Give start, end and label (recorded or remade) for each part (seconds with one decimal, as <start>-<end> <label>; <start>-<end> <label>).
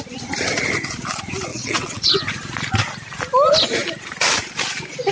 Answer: 0.0-1.5 recorded; 1.5-2.2 remade; 2.2-5.1 recorded